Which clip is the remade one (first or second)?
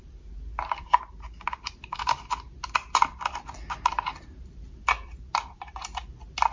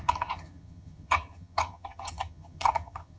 second